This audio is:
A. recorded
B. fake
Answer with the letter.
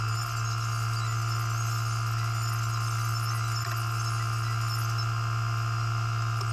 A